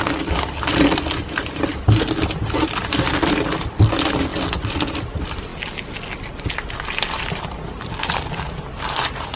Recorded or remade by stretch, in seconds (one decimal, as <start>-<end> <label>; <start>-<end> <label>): 0.0-5.5 remade; 5.5-8.8 recorded; 8.8-9.4 remade